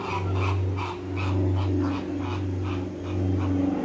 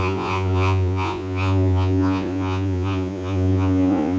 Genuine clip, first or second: first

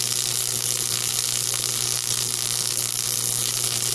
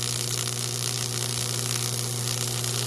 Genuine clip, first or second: second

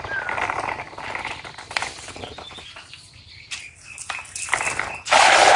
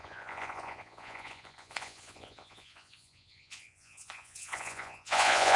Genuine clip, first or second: first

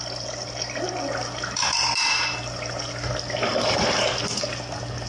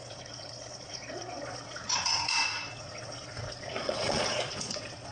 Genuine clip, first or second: first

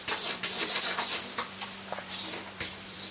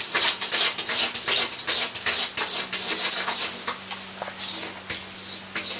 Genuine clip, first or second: second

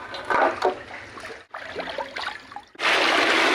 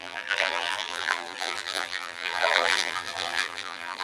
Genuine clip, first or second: first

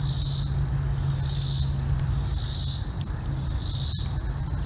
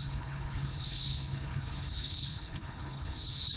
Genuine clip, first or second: first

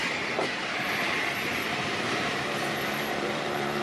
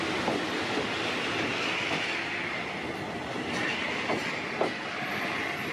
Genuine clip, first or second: second